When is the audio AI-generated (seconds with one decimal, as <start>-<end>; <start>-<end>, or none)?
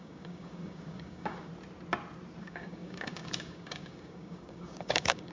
0.0-1.5; 2.4-5.3